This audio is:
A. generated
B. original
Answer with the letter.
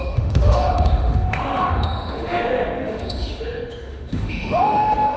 A